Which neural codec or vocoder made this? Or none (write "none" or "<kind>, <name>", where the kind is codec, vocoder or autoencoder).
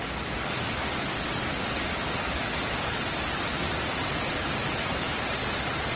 none